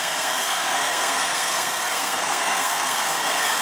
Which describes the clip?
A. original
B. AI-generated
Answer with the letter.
B